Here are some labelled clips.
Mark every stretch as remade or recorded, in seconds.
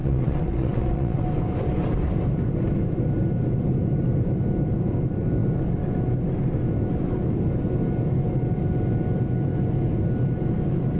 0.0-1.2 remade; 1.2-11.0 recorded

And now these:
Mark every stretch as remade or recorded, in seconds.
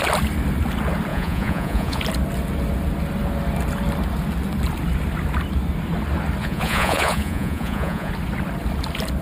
0.0-1.1 recorded; 1.1-2.0 remade; 2.0-6.4 recorded; 6.4-8.1 remade; 8.1-9.2 recorded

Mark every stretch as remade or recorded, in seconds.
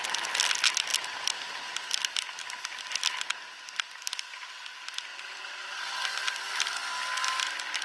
0.0-7.8 recorded